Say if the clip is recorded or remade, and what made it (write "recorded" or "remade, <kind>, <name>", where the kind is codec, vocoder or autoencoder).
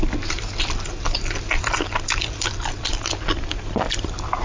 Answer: recorded